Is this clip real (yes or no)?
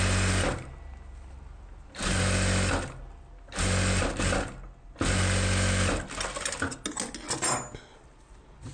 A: yes